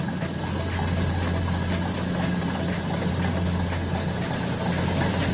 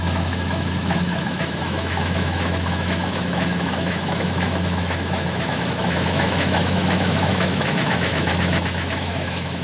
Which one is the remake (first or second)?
second